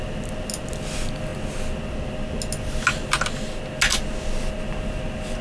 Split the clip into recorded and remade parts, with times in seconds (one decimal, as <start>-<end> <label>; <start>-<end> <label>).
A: 0.0-5.4 recorded